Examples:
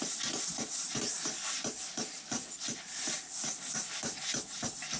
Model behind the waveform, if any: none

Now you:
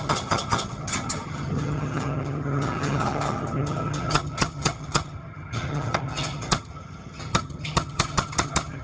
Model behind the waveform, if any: vocoder, HiFi-GAN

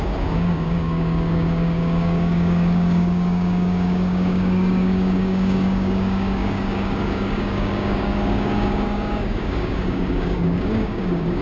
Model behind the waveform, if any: codec, DAC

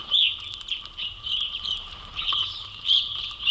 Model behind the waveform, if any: vocoder, BigVGAN v2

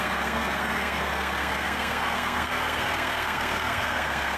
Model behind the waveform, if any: codec, SNAC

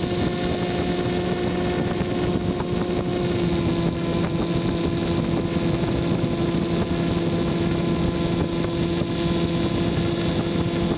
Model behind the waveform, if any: none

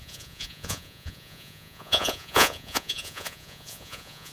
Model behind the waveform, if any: vocoder, Vocos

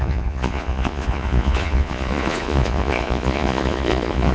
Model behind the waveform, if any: vocoder, Vocos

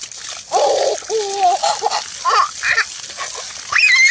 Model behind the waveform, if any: none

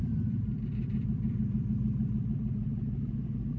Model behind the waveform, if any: vocoder, BigVGAN v2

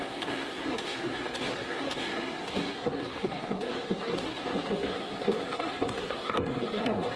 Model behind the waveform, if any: codec, SNAC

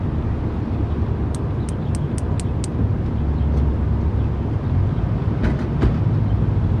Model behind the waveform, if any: none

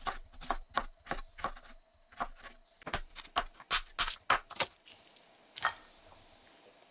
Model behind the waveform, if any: none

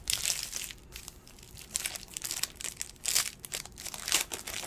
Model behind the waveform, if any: none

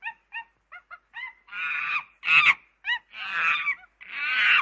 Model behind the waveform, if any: none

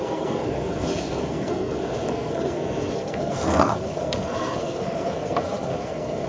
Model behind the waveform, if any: codec, SNAC